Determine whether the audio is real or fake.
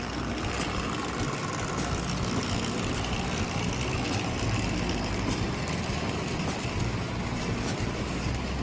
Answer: real